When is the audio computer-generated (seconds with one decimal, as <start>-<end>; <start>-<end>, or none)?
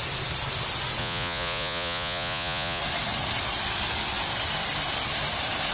1.0-2.8